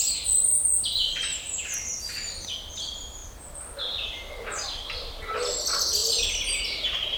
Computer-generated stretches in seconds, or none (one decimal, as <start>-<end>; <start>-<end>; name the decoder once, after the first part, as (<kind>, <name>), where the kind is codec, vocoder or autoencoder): none